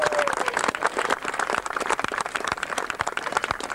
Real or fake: fake